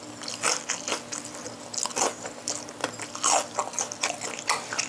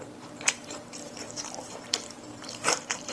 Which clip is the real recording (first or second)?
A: first